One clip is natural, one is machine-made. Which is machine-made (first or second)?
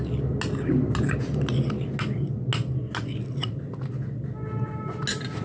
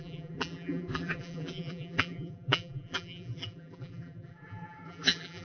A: second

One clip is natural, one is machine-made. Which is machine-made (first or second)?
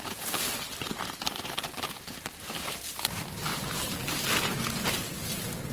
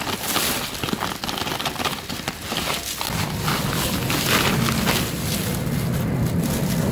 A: first